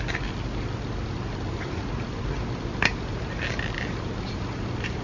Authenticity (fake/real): real